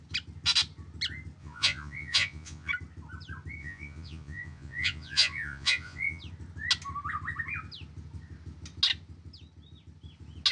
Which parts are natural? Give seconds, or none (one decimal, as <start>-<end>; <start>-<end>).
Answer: 0.0-1.4; 2.7-3.6; 6.2-10.5